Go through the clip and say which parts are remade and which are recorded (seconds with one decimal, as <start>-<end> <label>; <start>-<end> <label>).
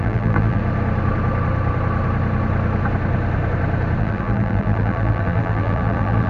0.0-0.6 remade; 0.6-4.0 recorded; 4.0-6.3 remade